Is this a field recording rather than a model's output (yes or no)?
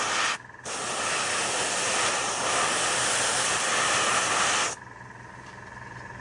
yes